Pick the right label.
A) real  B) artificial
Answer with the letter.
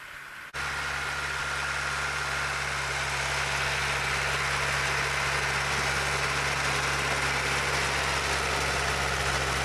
A